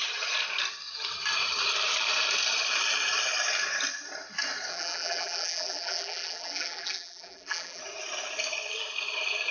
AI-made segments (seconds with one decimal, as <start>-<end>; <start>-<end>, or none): 4.7-7.8